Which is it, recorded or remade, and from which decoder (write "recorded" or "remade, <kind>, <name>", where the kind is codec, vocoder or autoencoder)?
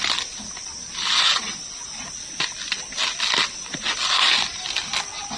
recorded